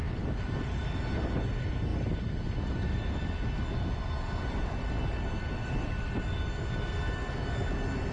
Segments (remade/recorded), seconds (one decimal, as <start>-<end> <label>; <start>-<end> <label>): 0.0-0.8 remade; 0.8-5.6 recorded; 5.6-6.2 remade; 6.2-8.1 recorded